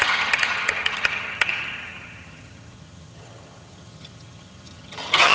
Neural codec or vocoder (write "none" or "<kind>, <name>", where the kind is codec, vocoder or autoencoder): vocoder, HiFi-GAN